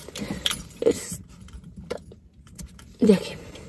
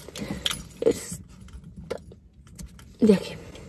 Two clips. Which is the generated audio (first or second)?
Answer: first